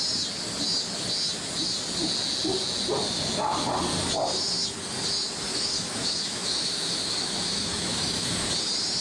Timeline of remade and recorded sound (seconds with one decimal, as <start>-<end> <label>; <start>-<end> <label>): 0.0-5.5 recorded; 5.5-8.5 remade; 8.5-9.0 recorded